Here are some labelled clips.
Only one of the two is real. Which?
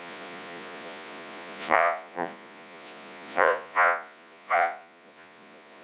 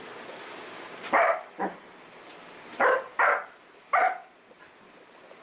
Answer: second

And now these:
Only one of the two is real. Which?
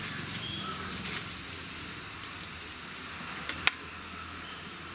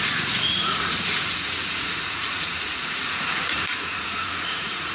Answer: first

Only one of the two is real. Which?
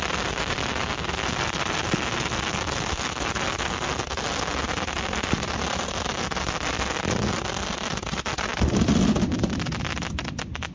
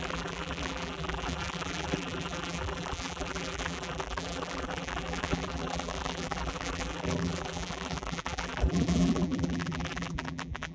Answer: first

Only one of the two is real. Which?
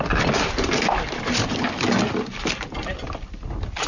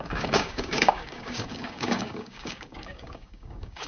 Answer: first